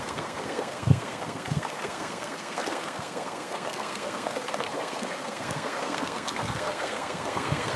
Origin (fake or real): fake